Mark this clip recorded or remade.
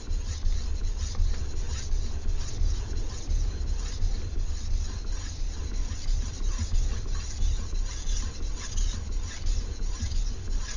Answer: recorded